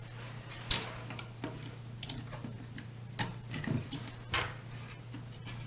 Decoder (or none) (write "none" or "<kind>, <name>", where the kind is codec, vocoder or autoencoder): none